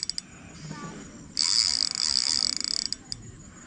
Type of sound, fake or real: real